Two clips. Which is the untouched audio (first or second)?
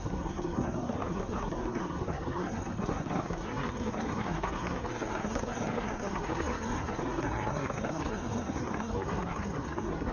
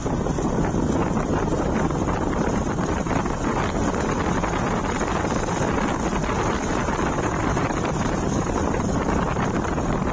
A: second